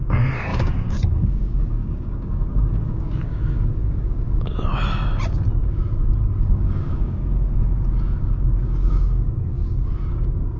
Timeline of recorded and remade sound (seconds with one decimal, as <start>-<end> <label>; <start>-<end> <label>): 0.0-4.7 remade; 4.7-5.3 recorded; 5.3-5.8 remade; 5.8-6.4 recorded; 6.4-10.6 remade

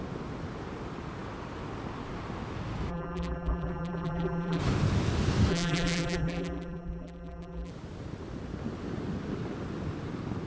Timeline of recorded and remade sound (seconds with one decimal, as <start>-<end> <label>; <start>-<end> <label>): 0.0-2.9 recorded; 2.9-4.6 remade; 4.6-5.5 recorded; 5.5-7.7 remade; 7.7-10.5 recorded

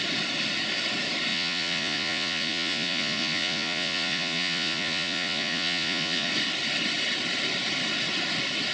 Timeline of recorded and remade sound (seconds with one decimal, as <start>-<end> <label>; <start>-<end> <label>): 0.0-1.3 recorded; 1.3-6.3 remade; 6.3-8.7 recorded

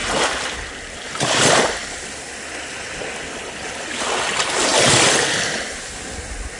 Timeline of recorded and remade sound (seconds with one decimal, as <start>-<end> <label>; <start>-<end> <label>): 0.0-6.6 recorded

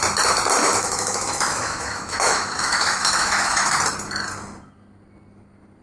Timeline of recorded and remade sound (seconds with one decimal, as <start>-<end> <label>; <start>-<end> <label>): 0.0-0.6 recorded; 0.6-3.7 remade; 3.7-5.8 recorded

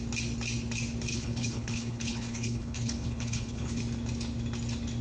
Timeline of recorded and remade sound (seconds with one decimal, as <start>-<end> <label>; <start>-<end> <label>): 0.0-1.1 recorded; 1.1-3.8 remade; 3.8-5.0 recorded